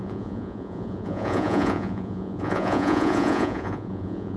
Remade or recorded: remade